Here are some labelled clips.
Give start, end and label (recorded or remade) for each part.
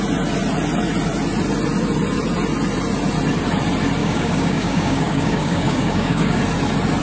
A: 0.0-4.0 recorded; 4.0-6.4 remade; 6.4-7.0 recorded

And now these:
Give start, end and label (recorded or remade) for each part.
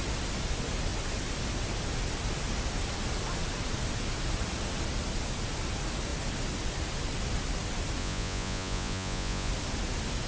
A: 0.0-8.0 recorded; 8.0-9.5 remade; 9.5-10.3 recorded